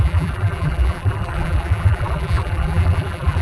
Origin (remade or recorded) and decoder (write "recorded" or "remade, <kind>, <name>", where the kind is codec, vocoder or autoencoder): remade, vocoder, BigVGAN v2